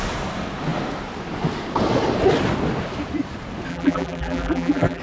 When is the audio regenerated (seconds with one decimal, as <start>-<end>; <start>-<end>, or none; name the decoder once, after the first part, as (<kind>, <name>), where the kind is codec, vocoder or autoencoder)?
3.7-5.0 (vocoder, BigVGAN v2)